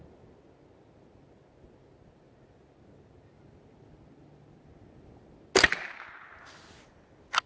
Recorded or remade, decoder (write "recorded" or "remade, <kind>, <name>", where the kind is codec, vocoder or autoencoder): recorded